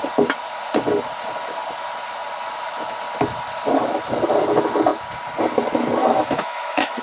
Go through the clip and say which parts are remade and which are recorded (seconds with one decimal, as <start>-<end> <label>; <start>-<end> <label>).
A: 0.0-6.0 recorded; 6.0-7.0 remade

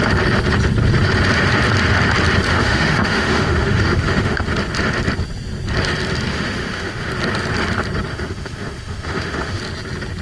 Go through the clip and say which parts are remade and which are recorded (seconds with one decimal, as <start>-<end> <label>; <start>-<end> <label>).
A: 0.0-2.5 recorded; 2.5-4.4 remade; 4.4-6.3 recorded; 6.3-7.1 remade; 7.1-8.1 recorded; 8.1-9.6 remade; 9.6-10.2 recorded

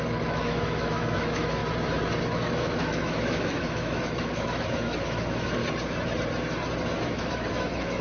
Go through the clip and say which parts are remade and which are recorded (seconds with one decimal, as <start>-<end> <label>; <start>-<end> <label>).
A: 0.0-1.6 remade; 1.6-2.2 recorded; 2.2-5.6 remade; 5.6-7.0 recorded; 7.0-8.0 remade

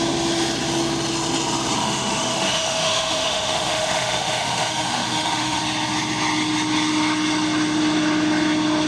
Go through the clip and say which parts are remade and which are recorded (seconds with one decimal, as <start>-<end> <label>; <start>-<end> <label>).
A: 0.0-1.8 recorded; 1.8-5.6 remade; 5.6-8.9 recorded

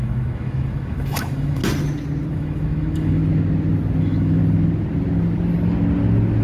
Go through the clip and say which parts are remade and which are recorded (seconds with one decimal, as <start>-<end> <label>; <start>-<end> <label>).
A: 0.0-1.6 remade; 1.6-2.3 recorded; 2.3-3.2 remade; 3.2-4.0 recorded; 4.0-4.4 remade; 4.4-6.4 recorded

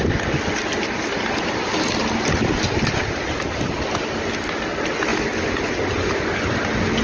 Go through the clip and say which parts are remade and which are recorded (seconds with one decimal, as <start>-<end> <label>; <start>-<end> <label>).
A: 0.0-7.0 recorded

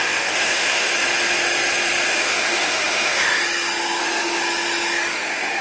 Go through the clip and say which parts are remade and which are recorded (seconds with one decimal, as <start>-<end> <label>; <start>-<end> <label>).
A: 0.0-0.9 remade; 0.9-2.1 recorded; 2.1-3.4 remade; 3.4-4.0 recorded; 4.0-4.4 remade; 4.4-5.1 recorded; 5.1-5.6 remade

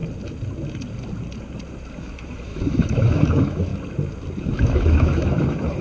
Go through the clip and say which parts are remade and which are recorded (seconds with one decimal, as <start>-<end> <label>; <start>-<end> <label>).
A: 0.0-2.0 recorded; 2.0-3.7 remade; 3.7-4.4 recorded; 4.4-5.8 remade